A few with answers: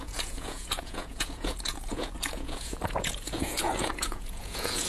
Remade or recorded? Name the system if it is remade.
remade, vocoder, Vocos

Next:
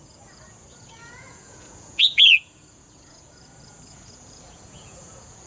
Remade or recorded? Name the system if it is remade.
remade, vocoder, Vocos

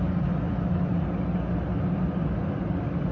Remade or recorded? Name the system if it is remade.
recorded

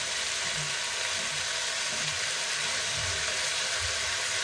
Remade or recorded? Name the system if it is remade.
recorded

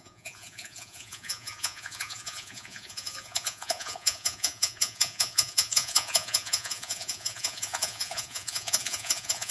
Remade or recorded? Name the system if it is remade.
remade, vocoder, Vocos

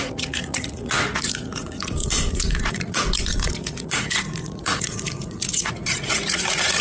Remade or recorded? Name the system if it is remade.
remade, vocoder, Vocos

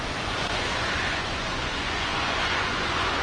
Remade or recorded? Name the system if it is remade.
remade, vocoder, Vocos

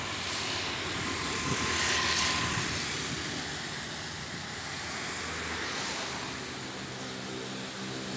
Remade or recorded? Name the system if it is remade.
recorded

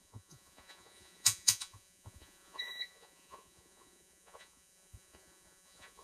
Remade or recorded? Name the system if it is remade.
remade, vocoder, Vocos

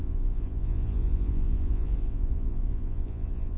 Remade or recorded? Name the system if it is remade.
remade, vocoder, Vocos